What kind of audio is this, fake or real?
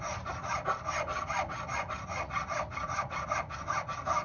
real